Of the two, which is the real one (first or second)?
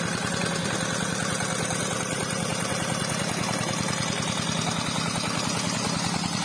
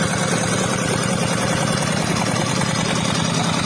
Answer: first